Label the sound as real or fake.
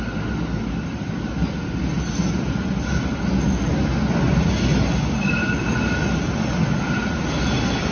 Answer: real